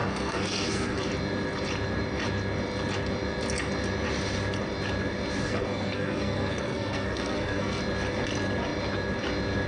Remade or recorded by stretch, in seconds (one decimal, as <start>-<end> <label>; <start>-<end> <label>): 0.0-1.1 remade; 1.1-5.4 recorded; 5.4-7.8 remade; 7.8-9.7 recorded